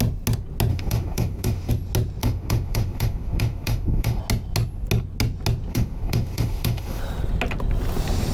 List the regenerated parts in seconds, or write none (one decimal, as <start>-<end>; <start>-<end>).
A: 0.7-1.7; 2.2-4.2; 5.7-7.0